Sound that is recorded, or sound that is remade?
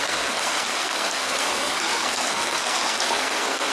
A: remade